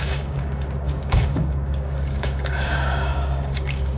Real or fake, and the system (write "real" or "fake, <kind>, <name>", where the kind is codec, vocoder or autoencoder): fake, codec, DAC